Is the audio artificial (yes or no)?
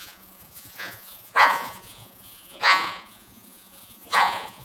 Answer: yes